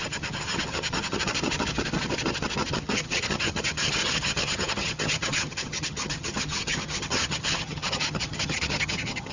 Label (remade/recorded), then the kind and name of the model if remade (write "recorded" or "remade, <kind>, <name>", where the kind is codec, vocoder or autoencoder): remade, vocoder, HiFi-GAN